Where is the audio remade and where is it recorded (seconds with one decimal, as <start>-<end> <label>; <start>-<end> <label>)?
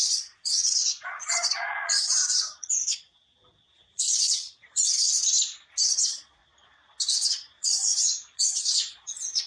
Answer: 0.0-5.2 remade; 5.2-5.9 recorded; 5.9-6.4 remade; 6.4-7.3 recorded; 7.3-9.5 remade